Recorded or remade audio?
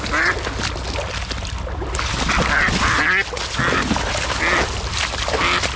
recorded